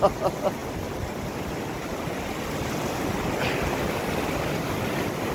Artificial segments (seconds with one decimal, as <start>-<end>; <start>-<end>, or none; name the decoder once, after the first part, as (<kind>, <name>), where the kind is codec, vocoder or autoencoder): none